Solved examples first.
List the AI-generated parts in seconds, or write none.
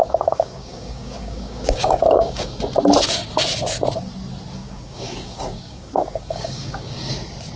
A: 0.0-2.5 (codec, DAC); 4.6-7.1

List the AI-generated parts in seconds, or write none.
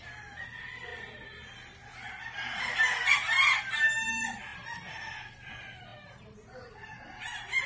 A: 5.9-7.1 (vocoder, BigVGAN v2)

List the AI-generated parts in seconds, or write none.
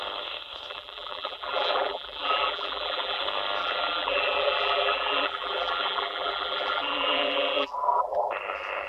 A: 0.7-3.2 (vocoder, BigVGAN v2); 3.6-8.3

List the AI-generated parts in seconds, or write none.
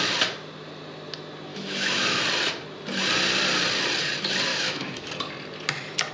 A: 1.5-2.2 (autoencoder, DAC-VAE); 4.5-5.1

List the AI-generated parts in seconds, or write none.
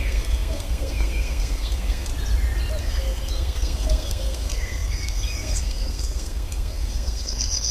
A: 0.0-2.1 (codec, SNAC); 2.8-7.7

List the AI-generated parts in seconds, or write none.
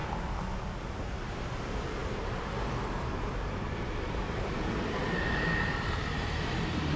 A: 2.0-5.9 (vocoder, BigVGAN v2)